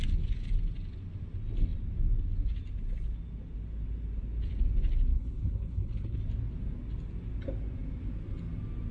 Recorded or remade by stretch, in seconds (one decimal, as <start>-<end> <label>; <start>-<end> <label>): 0.0-5.1 recorded; 5.1-6.2 remade; 6.2-8.9 recorded